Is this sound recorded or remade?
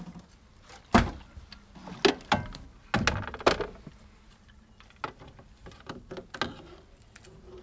recorded